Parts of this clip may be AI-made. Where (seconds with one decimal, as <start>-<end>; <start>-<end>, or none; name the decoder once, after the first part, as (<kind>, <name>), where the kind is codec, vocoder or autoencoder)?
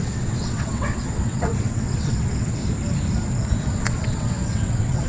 0.0-2.6 (vocoder, WaveNeXt); 3.8-5.1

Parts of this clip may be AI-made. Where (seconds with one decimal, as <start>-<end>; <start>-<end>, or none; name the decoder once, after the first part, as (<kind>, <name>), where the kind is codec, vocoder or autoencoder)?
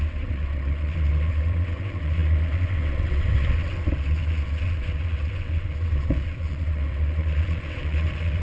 0.0-8.4 (vocoder, WaveNeXt)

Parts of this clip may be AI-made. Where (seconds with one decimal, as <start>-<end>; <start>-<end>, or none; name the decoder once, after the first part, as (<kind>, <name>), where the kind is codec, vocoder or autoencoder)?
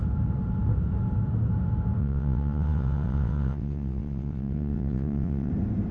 2.0-5.5 (vocoder, WaveNeXt)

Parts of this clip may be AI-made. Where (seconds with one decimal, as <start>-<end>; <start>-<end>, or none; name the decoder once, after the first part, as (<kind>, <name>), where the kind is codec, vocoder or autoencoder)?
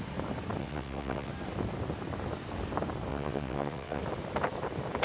0.6-1.3 (vocoder, WaveNeXt); 3.1-4.0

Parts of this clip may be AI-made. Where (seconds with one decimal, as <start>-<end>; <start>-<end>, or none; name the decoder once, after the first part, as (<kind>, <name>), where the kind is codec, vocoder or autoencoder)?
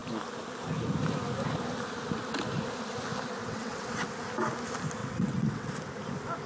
3.4-4.1 (vocoder, WaveNeXt); 5.0-5.7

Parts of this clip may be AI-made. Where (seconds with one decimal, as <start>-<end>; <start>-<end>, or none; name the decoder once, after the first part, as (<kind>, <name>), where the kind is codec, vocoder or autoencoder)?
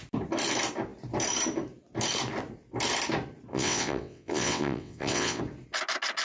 3.5-5.4 (vocoder, WaveNeXt)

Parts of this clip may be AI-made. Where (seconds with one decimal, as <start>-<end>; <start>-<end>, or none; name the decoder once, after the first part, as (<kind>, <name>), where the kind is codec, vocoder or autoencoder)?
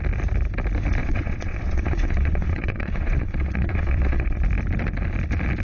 1.0-4.4 (vocoder, WaveNeXt)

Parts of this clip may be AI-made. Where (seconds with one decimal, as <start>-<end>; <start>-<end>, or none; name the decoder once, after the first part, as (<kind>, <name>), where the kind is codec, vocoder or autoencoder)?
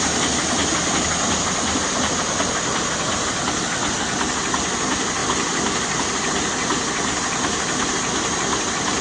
none